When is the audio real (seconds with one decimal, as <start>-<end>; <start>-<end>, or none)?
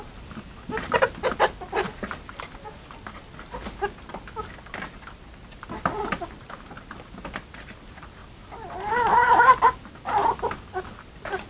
0.0-11.5